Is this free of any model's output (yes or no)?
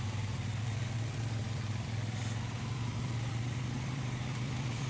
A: no